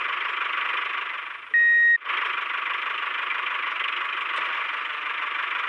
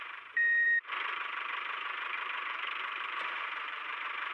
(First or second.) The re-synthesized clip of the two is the second